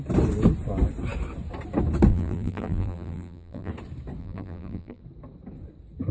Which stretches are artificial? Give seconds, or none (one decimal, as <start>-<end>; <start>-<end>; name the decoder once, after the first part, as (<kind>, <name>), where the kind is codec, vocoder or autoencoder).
2.1-3.7 (vocoder, BigVGAN v2); 4.2-5.0